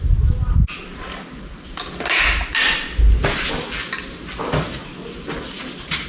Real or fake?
real